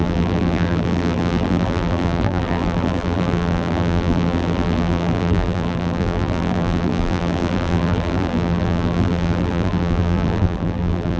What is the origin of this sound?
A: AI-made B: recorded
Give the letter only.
A